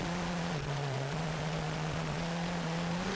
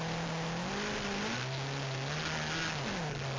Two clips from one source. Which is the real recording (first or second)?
second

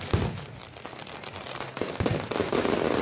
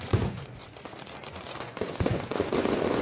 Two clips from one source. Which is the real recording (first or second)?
first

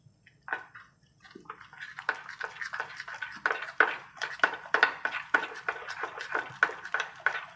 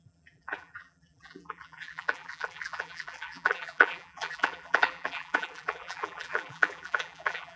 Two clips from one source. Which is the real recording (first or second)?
first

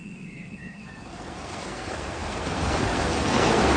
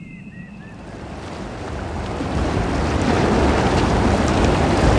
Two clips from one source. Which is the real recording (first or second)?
second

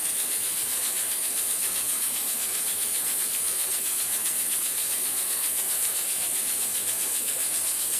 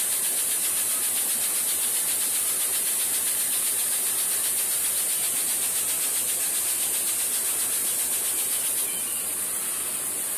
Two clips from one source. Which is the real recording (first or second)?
second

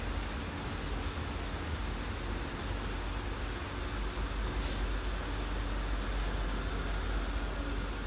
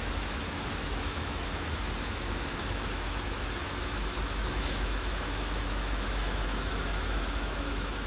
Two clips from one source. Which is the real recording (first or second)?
first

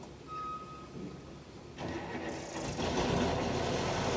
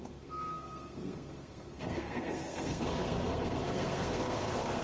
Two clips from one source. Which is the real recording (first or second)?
first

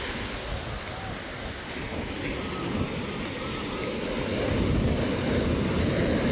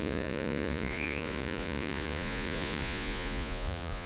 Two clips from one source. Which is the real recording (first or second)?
first